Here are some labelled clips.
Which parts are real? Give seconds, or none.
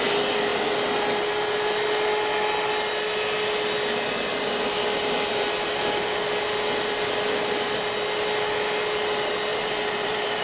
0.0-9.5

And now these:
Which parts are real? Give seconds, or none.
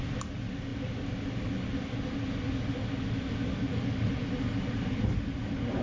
0.0-5.8